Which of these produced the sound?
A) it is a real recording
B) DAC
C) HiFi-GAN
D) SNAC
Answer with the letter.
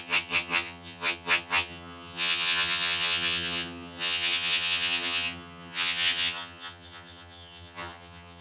C